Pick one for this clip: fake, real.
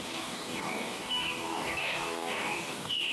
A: fake